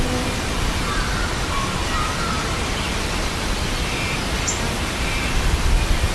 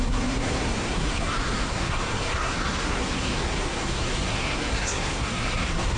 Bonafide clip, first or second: first